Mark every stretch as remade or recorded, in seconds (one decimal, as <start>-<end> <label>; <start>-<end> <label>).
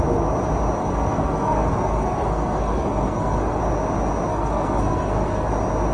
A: 0.0-0.8 recorded; 0.8-3.6 remade; 3.6-4.3 recorded; 4.3-5.5 remade; 5.5-5.9 recorded